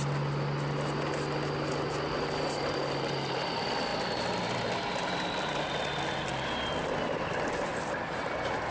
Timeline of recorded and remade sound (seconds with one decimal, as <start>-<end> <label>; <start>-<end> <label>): 0.0-3.9 recorded; 3.9-5.4 remade; 5.4-8.7 recorded